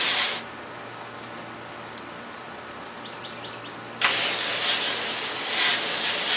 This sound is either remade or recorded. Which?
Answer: recorded